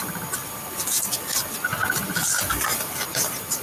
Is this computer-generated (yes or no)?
no